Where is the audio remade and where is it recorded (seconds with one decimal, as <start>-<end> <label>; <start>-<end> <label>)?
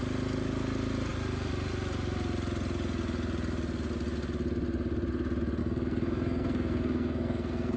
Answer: 0.0-5.6 recorded; 5.6-7.8 remade